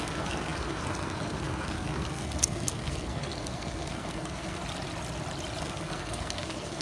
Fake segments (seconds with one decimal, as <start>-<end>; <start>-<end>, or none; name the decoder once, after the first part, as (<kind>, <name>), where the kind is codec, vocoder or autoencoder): 0.0-4.6 (codec, SNAC); 5.6-6.8